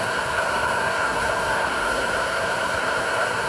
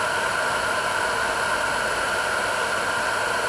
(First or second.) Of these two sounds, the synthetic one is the first